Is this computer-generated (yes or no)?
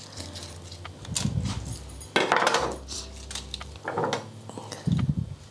no